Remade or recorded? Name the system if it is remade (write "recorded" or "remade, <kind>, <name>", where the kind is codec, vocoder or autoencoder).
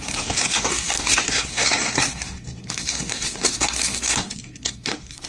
remade, codec, SNAC